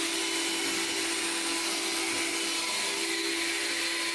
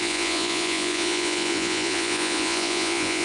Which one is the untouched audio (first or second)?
first